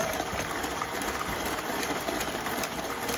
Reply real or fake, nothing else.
fake